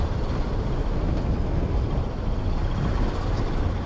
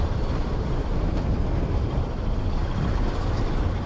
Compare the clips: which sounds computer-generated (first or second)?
second